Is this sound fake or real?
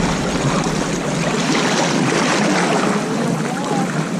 real